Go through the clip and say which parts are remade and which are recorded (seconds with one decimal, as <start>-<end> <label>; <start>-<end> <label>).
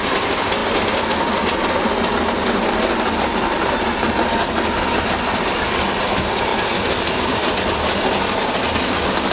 0.0-9.3 recorded